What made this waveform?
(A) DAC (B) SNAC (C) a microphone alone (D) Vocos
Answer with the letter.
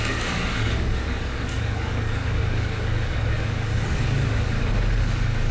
A